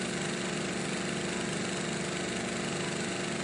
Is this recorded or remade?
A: recorded